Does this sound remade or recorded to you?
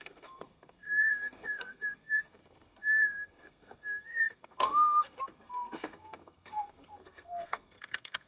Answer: remade